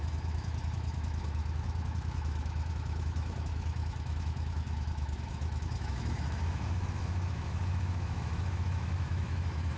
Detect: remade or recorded remade